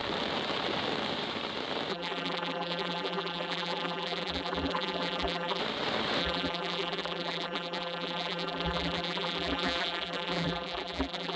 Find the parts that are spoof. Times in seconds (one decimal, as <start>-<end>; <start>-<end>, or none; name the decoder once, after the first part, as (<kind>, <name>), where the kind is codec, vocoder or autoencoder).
1.9-5.6 (vocoder, BigVGAN v2); 6.2-11.4